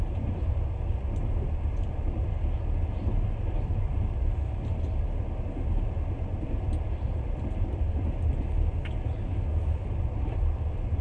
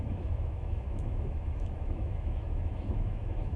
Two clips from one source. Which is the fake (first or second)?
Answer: second